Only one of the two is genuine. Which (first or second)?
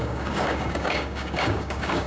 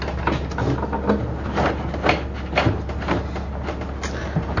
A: second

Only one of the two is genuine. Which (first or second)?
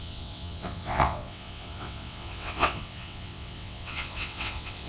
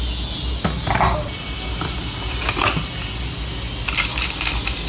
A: second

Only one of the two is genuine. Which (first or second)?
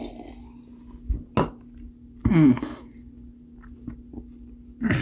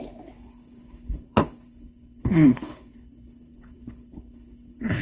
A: first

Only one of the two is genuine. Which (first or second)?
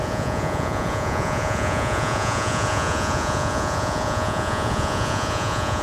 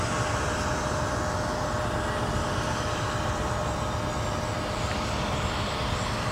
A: second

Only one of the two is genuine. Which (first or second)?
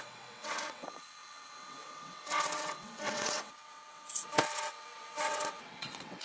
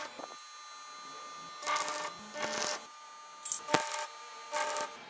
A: second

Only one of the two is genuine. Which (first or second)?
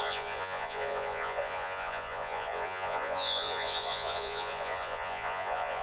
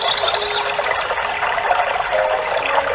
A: second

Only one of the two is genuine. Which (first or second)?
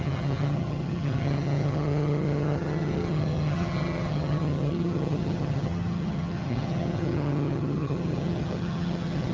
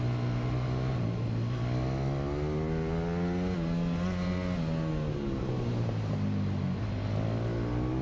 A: second